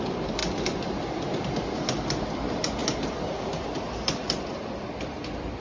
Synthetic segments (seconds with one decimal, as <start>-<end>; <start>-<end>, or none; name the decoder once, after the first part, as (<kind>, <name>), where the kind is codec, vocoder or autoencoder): none